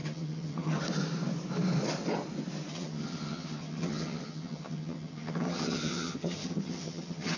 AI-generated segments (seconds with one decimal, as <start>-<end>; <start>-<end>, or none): 0.0-0.8; 2.7-7.4